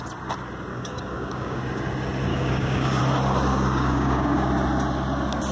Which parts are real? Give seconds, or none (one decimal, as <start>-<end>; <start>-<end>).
0.0-0.7; 1.6-2.3; 3.0-3.5; 4.5-5.5